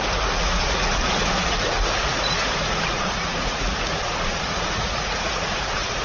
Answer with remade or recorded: remade